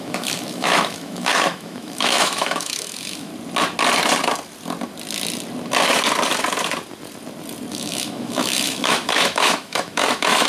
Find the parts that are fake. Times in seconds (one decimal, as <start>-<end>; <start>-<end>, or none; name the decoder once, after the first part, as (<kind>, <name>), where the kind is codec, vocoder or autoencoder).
0.0-3.3 (autoencoder, DAC-VAE); 7.7-10.5